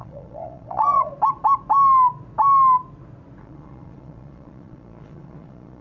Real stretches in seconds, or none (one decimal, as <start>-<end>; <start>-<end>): 1.1-3.4